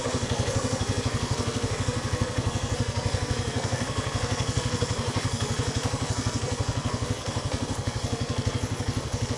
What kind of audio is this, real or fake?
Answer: fake